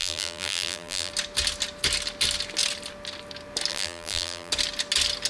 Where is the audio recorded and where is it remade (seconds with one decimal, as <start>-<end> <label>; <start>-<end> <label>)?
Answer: 0.0-1.1 remade; 1.1-3.7 recorded; 3.7-4.5 remade; 4.5-5.3 recorded